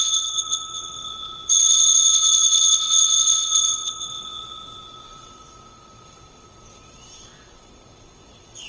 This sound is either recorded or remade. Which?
remade